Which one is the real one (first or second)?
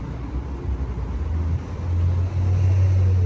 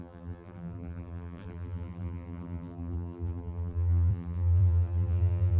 first